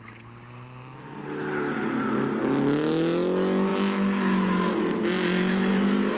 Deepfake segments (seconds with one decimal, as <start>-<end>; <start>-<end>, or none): none